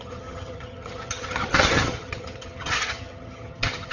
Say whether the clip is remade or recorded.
remade